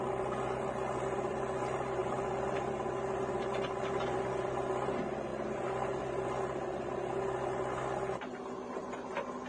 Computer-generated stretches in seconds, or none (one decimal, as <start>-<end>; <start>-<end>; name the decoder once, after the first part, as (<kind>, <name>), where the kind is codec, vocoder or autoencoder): none